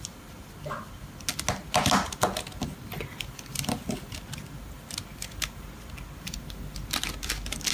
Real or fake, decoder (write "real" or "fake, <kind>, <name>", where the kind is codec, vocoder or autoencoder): real